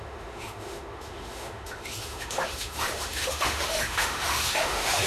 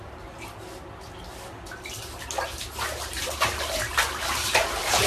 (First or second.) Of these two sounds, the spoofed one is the first